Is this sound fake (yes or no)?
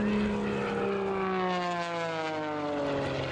no